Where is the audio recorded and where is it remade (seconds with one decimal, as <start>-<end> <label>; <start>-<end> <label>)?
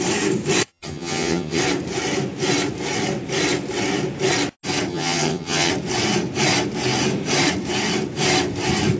0.0-0.7 recorded; 0.7-1.6 remade; 1.6-4.9 recorded; 4.9-5.7 remade; 5.7-9.0 recorded